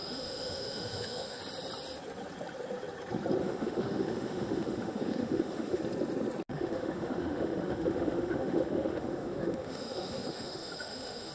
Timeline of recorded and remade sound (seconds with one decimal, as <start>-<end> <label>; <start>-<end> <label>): 0.0-1.4 remade; 1.4-3.4 recorded; 3.4-5.8 remade; 5.8-6.5 recorded; 6.5-11.3 remade